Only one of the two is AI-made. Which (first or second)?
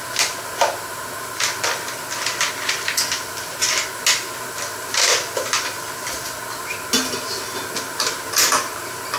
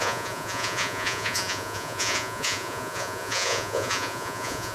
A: second